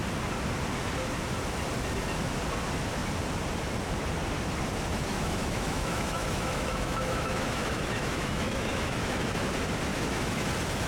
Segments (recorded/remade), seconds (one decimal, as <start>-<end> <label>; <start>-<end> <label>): 0.0-5.1 recorded; 5.1-9.5 remade; 9.5-9.9 recorded; 9.9-10.5 remade; 10.5-10.9 recorded